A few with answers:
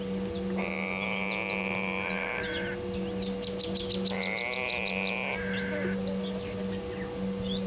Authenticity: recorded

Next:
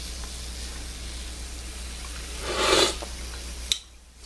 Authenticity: recorded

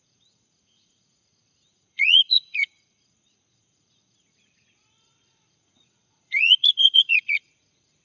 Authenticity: remade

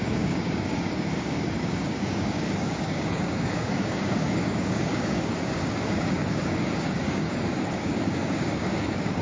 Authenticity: remade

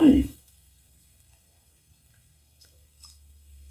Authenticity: remade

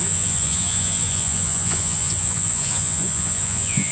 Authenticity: remade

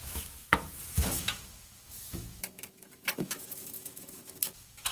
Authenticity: remade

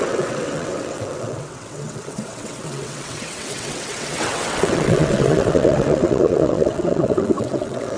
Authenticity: remade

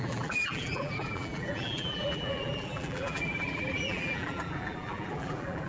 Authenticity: remade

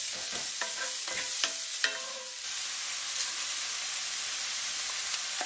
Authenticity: recorded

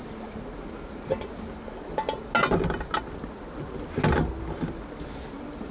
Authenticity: recorded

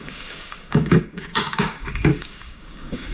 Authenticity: remade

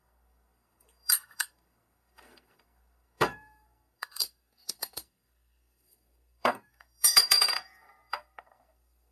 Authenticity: remade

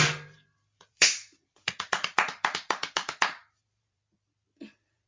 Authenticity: remade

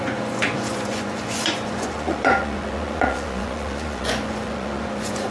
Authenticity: remade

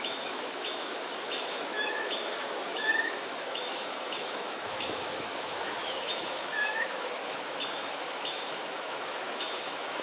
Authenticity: remade